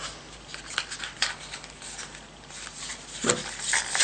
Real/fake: real